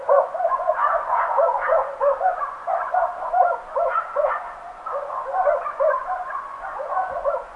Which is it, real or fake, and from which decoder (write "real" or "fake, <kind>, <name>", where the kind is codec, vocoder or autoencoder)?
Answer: fake, vocoder, Vocos